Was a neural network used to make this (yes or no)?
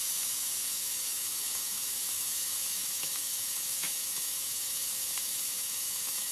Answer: yes